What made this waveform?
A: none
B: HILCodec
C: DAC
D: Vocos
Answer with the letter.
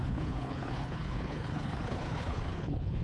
B